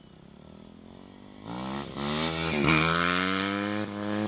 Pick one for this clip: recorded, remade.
recorded